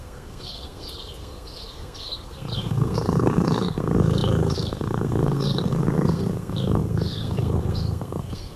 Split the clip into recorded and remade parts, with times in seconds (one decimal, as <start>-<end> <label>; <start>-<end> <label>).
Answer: 0.0-8.6 remade